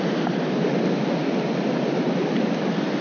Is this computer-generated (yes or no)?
no